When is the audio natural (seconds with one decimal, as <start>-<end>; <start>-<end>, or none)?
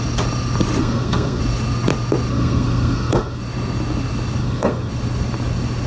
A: 0.0-0.8; 1.4-2.3; 3.4-4.4; 4.9-5.9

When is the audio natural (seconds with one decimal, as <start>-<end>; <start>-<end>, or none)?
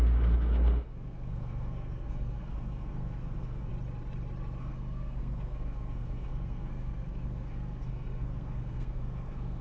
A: 3.7-4.6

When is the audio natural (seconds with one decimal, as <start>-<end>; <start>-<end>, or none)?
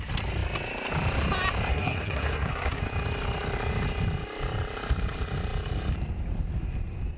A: 0.0-1.7; 2.8-7.2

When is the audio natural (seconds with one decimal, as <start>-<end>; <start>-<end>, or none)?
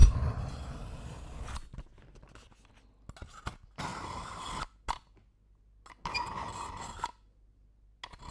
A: 0.0-8.3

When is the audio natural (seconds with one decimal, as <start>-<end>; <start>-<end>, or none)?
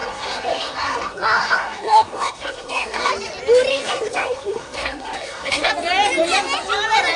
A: 3.1-3.7; 5.7-7.2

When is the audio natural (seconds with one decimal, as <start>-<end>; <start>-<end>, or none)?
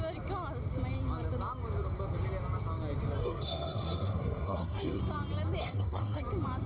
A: 0.0-3.2; 5.0-5.6; 6.2-6.7